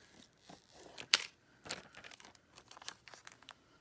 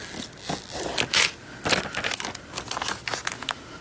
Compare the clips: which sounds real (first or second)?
second